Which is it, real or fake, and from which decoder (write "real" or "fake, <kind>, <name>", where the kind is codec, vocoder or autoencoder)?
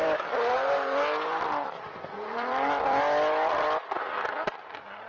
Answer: fake, vocoder, BigVGAN v2